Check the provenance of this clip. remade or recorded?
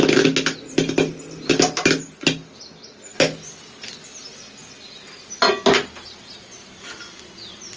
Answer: recorded